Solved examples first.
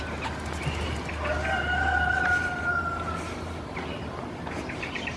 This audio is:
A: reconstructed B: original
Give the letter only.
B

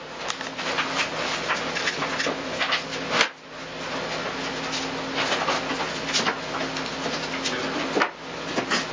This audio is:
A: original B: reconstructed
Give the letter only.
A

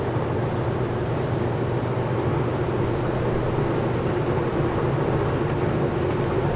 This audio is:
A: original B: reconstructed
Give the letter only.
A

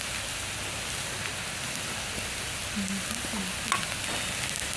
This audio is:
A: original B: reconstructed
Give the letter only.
A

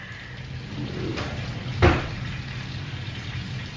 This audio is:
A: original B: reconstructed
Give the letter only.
A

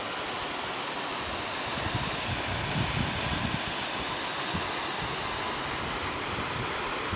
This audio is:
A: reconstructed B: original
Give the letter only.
B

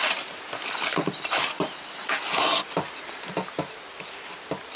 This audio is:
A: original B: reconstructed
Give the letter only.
A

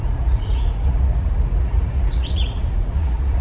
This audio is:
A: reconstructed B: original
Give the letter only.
A